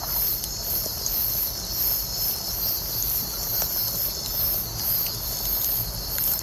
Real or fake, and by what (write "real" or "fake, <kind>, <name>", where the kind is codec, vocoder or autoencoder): real